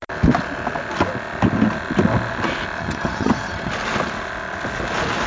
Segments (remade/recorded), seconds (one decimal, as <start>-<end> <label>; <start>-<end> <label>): 0.0-2.8 recorded; 2.8-3.7 remade; 3.7-5.3 recorded